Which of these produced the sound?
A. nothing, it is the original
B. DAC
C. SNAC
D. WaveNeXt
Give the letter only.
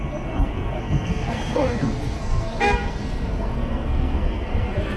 C